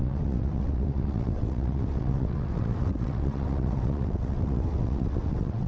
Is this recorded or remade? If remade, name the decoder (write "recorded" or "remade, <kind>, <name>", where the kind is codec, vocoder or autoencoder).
remade, vocoder, WaveNeXt